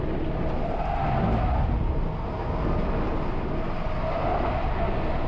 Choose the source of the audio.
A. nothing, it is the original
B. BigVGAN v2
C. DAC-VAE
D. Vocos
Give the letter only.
A